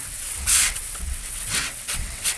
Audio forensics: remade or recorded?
remade